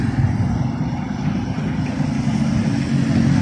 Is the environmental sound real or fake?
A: real